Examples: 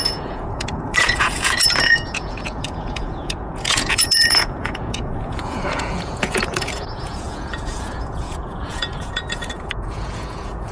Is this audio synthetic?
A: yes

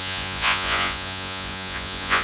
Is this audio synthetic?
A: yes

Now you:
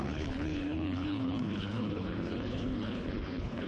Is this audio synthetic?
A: yes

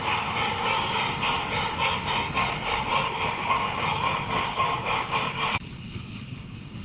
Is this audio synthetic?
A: yes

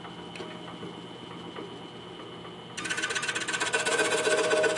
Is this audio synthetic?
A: no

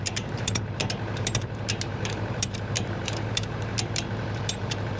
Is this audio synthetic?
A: yes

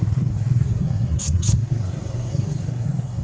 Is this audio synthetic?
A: yes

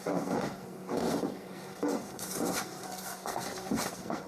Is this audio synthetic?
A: yes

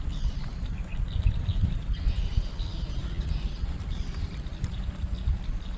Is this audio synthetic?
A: no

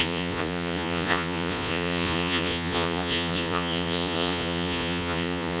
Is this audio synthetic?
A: yes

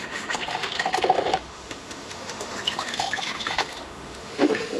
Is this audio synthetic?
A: yes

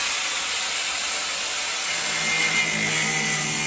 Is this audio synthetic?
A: no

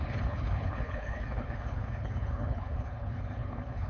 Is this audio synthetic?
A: yes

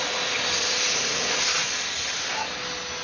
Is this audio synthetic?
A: no